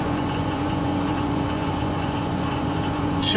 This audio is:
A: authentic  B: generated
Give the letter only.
B